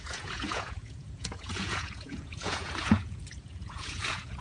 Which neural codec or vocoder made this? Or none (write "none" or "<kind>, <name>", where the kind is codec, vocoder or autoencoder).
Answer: vocoder, Vocos